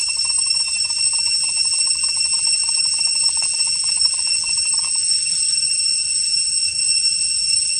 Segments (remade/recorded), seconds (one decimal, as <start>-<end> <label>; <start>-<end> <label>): 0.0-1.1 recorded; 1.1-7.8 remade